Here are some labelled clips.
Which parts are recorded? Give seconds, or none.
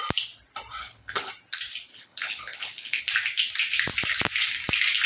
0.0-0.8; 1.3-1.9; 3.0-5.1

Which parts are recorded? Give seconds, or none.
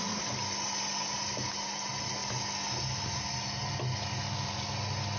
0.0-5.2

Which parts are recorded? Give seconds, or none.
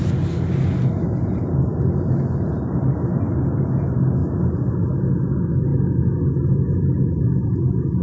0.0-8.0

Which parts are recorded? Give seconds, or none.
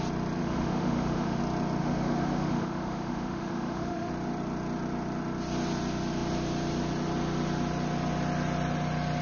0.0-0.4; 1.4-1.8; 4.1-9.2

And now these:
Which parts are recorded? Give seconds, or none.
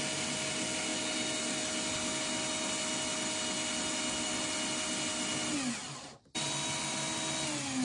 0.0-7.8